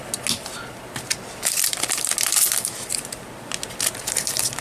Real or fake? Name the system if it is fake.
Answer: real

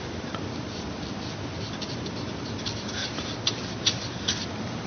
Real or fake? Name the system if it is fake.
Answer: real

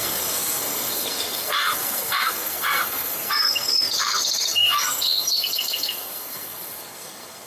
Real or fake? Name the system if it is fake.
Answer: fake, codec, SNAC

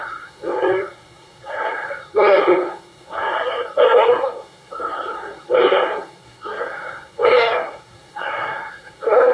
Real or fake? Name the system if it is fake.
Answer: fake, codec, SNAC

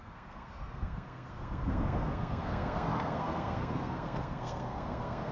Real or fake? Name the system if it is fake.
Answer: fake, codec, SNAC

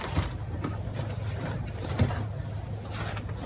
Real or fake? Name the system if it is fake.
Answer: real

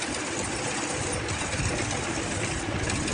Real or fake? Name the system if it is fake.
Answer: real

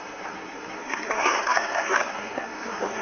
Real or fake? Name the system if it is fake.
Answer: fake, codec, SNAC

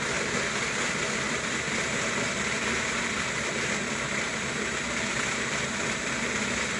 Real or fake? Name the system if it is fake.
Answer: real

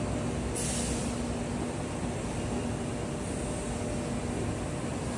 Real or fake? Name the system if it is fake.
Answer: real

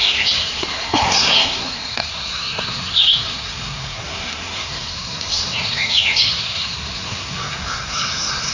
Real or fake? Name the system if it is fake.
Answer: fake, codec, SNAC